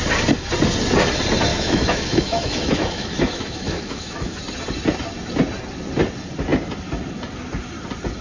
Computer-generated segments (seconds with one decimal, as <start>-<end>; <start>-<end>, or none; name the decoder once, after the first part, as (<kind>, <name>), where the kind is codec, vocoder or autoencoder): 1.5-4.4 (autoencoder, DAC-VAE)